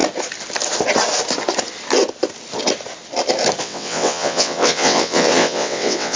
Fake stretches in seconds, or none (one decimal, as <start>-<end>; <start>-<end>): 3.6-6.2